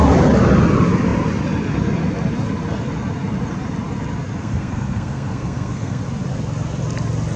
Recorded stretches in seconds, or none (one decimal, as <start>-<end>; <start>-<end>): 0.0-4.4; 6.0-7.4